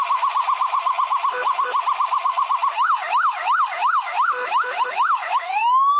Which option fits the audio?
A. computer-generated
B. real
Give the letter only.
A